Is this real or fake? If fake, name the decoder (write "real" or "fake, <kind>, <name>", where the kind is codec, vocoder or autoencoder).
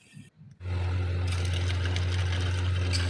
real